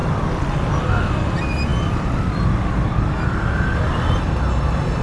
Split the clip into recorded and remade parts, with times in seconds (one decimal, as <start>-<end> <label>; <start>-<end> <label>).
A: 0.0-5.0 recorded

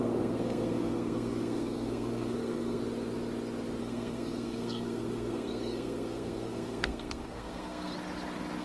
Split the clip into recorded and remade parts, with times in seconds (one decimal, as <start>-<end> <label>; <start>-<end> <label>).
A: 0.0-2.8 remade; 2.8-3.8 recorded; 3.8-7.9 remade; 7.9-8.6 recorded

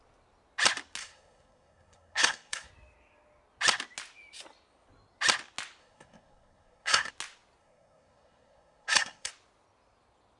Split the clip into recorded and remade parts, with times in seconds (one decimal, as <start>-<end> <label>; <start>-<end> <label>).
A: 0.0-1.0 recorded; 1.0-2.7 remade; 2.7-5.8 recorded; 5.8-7.1 remade; 7.1-7.6 recorded; 7.6-9.3 remade; 9.3-10.4 recorded

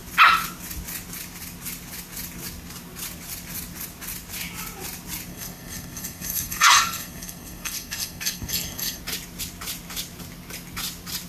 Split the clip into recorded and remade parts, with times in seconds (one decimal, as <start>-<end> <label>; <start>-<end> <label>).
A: 0.0-5.3 recorded; 5.3-9.0 remade; 9.0-11.3 recorded

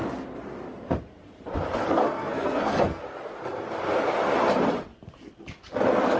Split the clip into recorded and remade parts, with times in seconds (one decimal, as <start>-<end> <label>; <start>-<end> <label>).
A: 0.0-2.0 recorded; 2.0-3.0 remade; 3.0-6.2 recorded

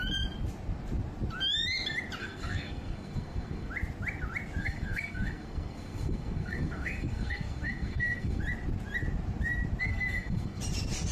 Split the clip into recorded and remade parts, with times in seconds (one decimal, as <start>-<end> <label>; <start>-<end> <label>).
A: 0.0-2.2 recorded; 2.2-3.7 remade; 3.7-4.6 recorded; 4.6-8.4 remade; 8.4-9.8 recorded; 9.8-10.6 remade; 10.6-11.1 recorded